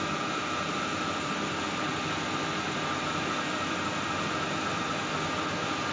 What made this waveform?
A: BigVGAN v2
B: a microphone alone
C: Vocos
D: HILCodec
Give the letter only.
A